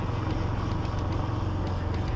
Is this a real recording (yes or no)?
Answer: yes